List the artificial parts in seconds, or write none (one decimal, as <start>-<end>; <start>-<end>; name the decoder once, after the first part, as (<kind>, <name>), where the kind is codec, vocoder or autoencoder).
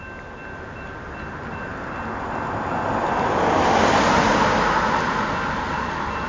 none